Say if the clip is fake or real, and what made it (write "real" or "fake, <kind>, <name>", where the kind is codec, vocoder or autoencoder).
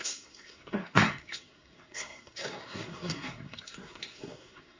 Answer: fake, codec, SNAC